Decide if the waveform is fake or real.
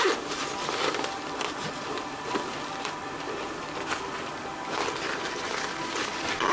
real